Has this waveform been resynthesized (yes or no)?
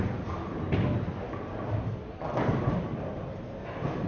no